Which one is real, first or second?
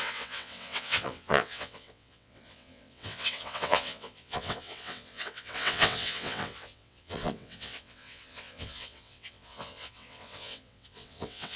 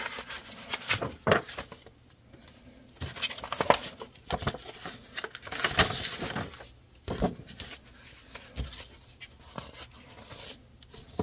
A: second